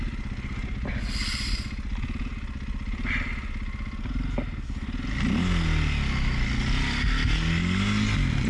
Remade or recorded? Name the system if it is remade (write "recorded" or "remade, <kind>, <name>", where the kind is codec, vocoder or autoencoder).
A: recorded